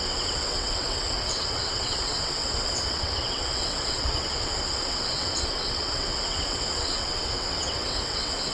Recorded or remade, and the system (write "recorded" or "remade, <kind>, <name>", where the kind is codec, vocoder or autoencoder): remade, vocoder, WaveNeXt